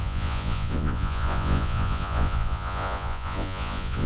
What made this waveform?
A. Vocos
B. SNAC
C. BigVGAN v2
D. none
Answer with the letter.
A